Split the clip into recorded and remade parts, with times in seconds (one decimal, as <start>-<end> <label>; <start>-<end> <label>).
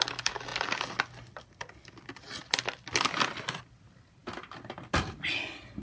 0.0-5.8 recorded